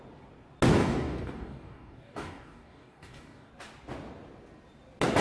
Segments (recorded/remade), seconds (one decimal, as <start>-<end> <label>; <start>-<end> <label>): 0.0-0.8 recorded; 0.8-3.5 remade; 3.5-5.2 recorded